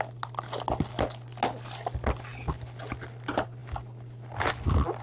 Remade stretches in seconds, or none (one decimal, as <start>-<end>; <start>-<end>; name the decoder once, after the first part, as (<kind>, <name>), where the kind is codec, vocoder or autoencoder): none